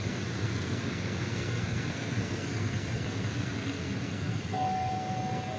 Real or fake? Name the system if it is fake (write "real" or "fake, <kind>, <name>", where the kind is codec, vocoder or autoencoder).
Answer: fake, codec, SNAC